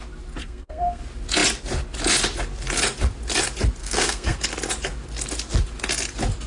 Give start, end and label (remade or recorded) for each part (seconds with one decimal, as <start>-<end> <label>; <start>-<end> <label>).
0.0-0.4 recorded; 0.4-1.0 remade; 1.0-3.8 recorded; 3.8-4.4 remade; 4.4-6.5 recorded